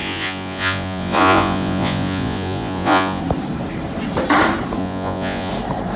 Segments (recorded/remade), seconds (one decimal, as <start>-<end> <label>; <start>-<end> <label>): 0.0-3.2 remade; 3.2-4.8 recorded; 4.8-5.5 remade; 5.5-6.0 recorded